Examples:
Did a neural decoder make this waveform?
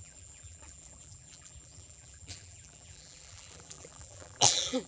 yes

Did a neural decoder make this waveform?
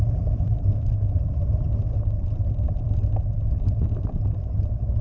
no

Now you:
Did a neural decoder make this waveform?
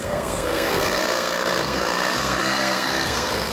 yes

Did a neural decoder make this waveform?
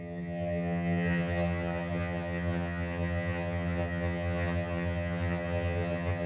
yes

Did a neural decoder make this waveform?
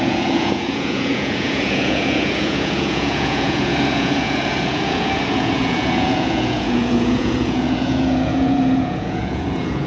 yes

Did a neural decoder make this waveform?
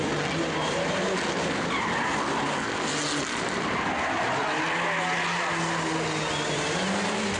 no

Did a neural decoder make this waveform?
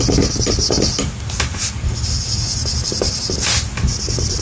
no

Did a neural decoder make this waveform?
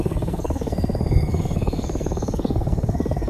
yes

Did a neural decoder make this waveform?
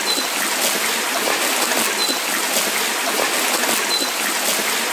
no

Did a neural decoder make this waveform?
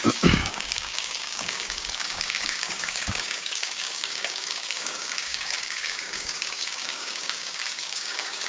yes